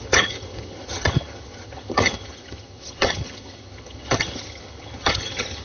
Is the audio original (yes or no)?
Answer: no